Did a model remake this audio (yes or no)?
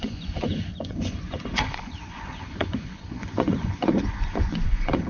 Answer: yes